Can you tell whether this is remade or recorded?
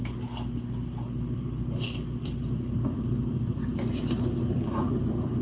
recorded